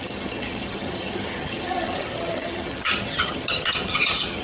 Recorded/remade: remade